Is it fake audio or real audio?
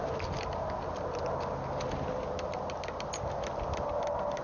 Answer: real